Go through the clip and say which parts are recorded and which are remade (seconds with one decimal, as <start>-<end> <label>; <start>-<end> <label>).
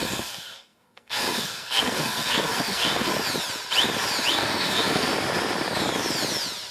0.0-3.1 remade; 3.1-4.3 recorded; 4.3-5.1 remade; 5.1-6.7 recorded